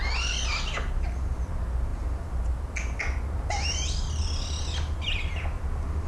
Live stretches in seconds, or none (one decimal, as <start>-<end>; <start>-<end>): 0.0-6.1